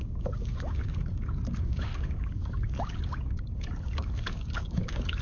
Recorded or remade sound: remade